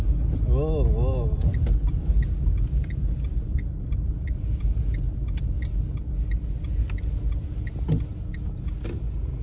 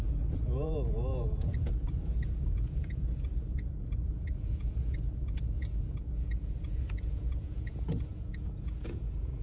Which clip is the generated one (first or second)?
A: second